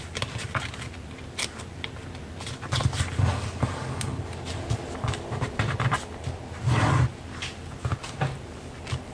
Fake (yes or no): no